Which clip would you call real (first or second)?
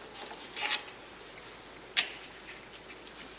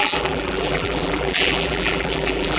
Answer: first